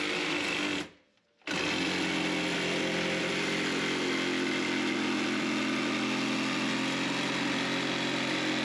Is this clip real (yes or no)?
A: yes